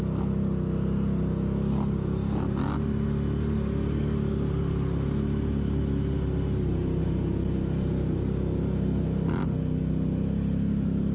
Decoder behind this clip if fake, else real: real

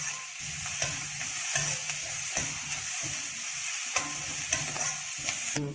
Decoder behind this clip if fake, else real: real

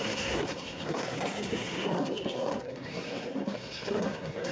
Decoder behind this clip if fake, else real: fake, codec, SNAC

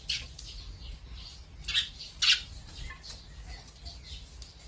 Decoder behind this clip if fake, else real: real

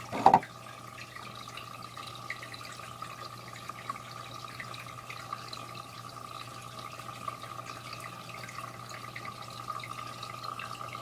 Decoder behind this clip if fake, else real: real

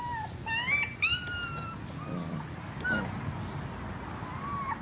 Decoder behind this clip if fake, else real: real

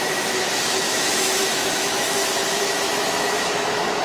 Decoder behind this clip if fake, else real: fake, autoencoder, DAC-VAE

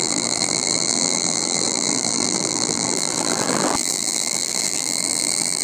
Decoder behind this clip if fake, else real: fake, vocoder, BigVGAN v2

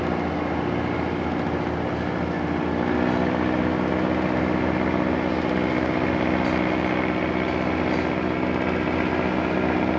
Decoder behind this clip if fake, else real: real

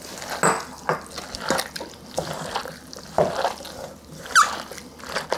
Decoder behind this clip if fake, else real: real